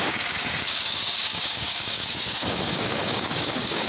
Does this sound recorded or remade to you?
remade